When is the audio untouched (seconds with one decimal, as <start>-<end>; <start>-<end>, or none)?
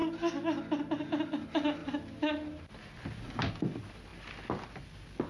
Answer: 0.0-5.3